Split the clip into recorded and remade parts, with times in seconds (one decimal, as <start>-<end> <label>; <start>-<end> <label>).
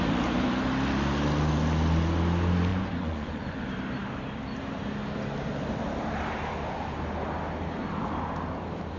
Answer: 0.0-2.7 recorded; 2.7-3.6 remade; 3.6-9.0 recorded